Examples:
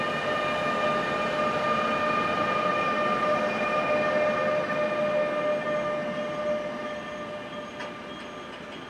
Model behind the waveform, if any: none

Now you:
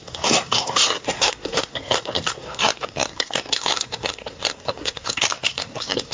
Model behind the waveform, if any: codec, SNAC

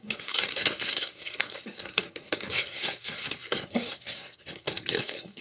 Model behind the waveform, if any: codec, SNAC